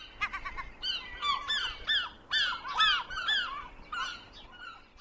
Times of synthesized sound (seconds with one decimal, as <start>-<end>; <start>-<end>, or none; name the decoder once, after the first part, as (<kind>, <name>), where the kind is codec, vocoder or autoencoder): none